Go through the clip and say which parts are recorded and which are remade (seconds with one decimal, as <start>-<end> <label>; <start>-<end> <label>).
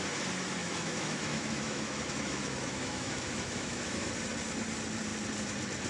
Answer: 0.0-0.6 recorded; 0.6-4.1 remade; 4.1-5.9 recorded